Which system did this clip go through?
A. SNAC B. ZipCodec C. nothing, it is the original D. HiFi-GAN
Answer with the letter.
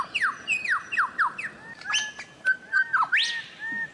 C